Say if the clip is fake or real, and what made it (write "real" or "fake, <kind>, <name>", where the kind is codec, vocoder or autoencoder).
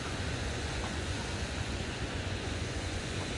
fake, vocoder, Vocos